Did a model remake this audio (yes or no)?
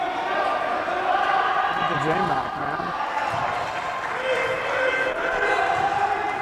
no